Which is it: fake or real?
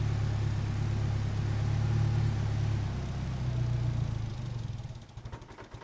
real